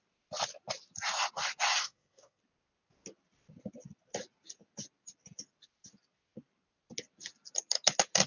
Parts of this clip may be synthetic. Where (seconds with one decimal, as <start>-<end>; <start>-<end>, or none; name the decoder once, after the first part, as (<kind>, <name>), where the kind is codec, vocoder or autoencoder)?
1.8-2.4 (codec, SNAC)